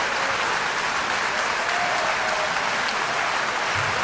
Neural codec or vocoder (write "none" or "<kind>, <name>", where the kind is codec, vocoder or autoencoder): none